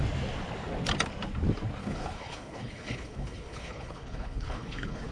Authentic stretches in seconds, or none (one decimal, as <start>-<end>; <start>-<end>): 0.0-1.8